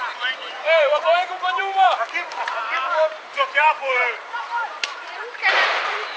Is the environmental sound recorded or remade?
remade